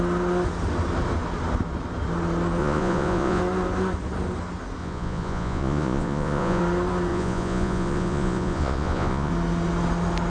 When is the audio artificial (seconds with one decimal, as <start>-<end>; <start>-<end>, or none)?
2.6-3.4; 4.8-6.6; 7.1-9.3

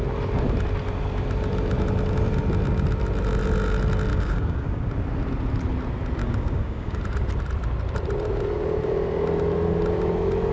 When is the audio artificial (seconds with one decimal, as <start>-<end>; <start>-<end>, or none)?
4.1-4.9; 6.2-7.0

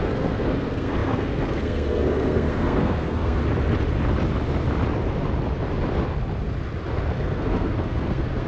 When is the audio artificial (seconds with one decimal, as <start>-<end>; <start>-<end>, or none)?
0.0-3.4; 7.1-8.5

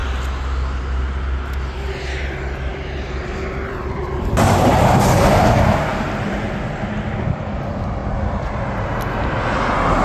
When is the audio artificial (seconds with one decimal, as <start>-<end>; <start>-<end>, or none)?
none

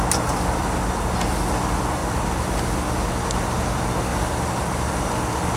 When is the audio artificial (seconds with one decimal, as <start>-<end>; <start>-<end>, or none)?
none